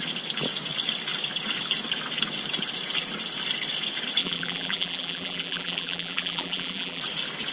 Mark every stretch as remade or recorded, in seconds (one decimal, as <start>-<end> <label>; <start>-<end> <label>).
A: 0.0-4.2 recorded; 4.2-7.0 remade; 7.0-7.5 recorded